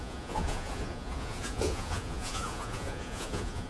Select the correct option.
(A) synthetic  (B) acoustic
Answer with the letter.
A